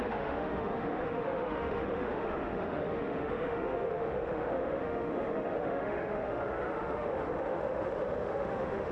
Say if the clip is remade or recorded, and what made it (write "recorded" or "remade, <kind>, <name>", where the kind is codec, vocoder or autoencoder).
remade, autoencoder, DAC-VAE